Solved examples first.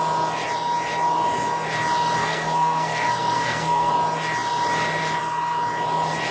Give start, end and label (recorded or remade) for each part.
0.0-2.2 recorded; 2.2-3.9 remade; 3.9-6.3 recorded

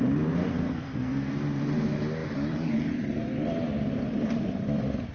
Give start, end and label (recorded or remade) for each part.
0.0-0.5 recorded; 0.5-1.3 remade; 1.3-5.1 recorded

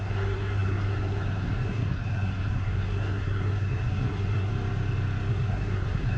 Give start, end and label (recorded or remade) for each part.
0.0-4.5 remade; 4.5-5.3 recorded; 5.3-6.2 remade